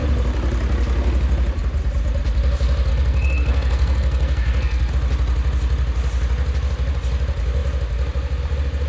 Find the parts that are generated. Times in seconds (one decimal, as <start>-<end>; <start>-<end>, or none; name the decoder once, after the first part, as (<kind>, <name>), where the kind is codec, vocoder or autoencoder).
2.9-4.9 (codec, SNAC)